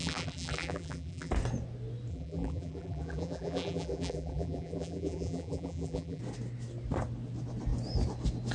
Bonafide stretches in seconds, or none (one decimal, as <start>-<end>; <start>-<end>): 1.3-2.1; 6.2-8.5

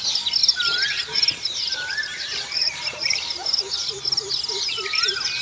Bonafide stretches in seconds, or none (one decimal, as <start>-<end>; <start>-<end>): 0.0-0.4; 3.6-5.4

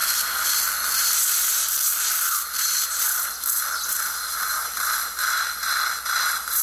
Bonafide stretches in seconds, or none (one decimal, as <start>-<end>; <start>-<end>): 0.0-4.5; 5.4-6.6

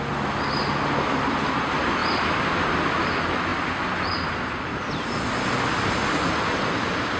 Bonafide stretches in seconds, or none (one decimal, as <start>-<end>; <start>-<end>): 0.0-7.2

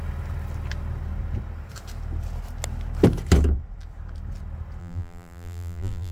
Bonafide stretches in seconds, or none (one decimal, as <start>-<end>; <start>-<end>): 0.0-4.8

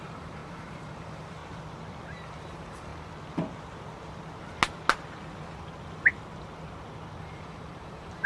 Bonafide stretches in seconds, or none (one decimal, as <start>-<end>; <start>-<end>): 1.4-2.0; 2.9-7.2

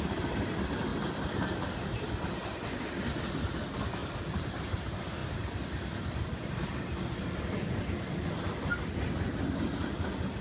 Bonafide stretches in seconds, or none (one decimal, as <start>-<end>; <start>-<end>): 0.0-0.9; 2.8-4.0; 4.7-5.2; 8.7-10.4